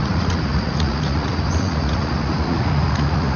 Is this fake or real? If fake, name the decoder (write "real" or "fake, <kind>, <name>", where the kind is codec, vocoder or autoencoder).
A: fake, vocoder, Vocos